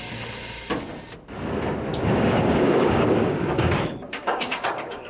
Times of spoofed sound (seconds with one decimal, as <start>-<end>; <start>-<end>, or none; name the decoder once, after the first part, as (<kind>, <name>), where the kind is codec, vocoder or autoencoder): 1.9-5.1 (codec, DAC)